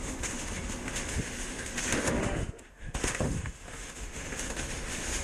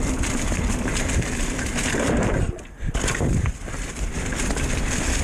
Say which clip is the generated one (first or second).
first